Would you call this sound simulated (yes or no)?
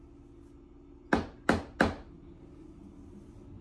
no